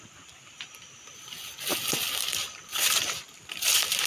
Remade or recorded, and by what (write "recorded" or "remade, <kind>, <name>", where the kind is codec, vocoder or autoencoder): remade, vocoder, BigVGAN v2